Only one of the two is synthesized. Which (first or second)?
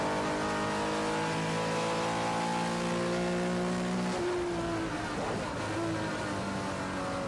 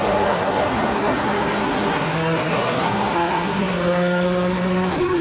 second